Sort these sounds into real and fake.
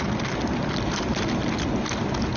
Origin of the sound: real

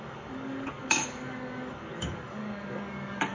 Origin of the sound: fake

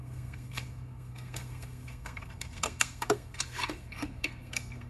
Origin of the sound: fake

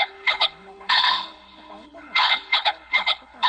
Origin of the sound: fake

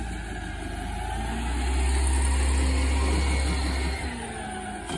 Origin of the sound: real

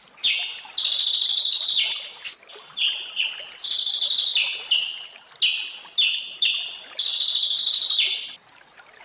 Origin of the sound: real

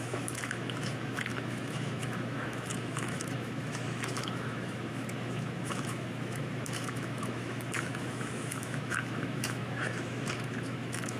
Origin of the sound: fake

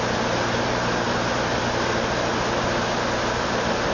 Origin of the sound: real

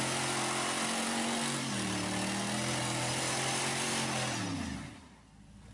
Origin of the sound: real